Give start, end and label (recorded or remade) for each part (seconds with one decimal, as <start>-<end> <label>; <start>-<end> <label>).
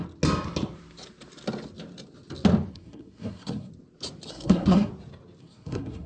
0.0-2.7 recorded; 2.7-3.7 remade; 3.7-4.3 recorded; 4.3-4.9 remade; 4.9-5.4 recorded; 5.4-6.1 remade